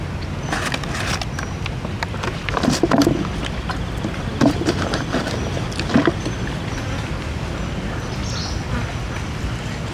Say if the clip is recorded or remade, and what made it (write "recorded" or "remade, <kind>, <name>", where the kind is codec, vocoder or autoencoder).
recorded